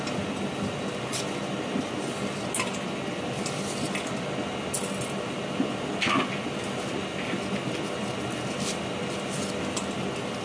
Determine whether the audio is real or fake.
real